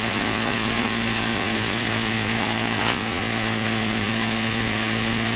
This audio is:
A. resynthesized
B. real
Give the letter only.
A